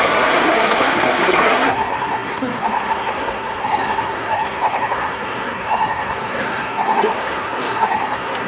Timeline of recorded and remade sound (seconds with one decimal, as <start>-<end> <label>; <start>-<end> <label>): 0.0-8.5 remade